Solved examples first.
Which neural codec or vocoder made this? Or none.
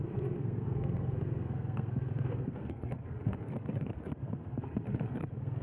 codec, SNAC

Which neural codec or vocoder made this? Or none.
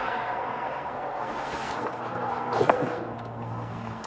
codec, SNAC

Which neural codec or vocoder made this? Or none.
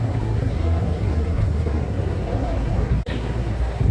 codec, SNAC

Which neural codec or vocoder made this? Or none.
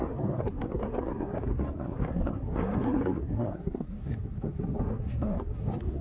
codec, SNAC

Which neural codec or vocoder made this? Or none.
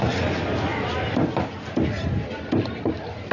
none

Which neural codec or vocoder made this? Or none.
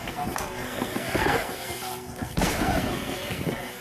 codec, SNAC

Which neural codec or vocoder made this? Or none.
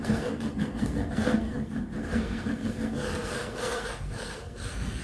codec, SNAC